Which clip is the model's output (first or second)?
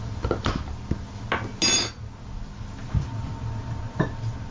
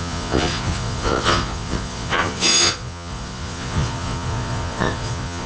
second